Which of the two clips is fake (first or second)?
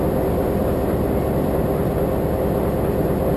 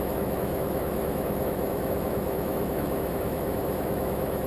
second